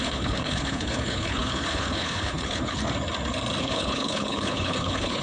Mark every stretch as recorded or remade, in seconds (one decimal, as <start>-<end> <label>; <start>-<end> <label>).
0.0-2.8 remade; 2.8-3.6 recorded; 3.6-5.2 remade